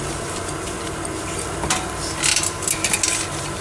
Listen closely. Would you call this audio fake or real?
real